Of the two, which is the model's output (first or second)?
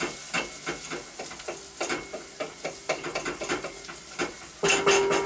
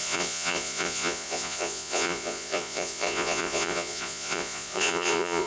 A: second